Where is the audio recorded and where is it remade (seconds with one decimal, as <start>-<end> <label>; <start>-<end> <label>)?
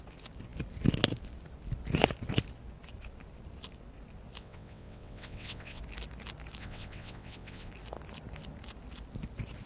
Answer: 0.0-4.4 recorded; 4.4-5.8 remade; 5.8-6.6 recorded; 6.6-7.7 remade; 7.7-9.7 recorded